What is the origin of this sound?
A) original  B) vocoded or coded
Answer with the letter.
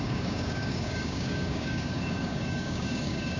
B